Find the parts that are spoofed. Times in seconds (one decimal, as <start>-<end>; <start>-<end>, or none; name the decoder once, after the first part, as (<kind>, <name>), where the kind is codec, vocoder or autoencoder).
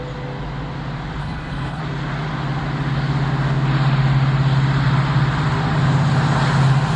1.2-1.8 (codec, HILCodec)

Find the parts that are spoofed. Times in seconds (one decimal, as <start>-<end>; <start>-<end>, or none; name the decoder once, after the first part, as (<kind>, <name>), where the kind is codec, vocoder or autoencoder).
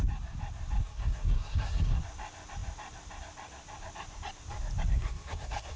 0.8-2.0 (codec, SNAC); 4.9-5.8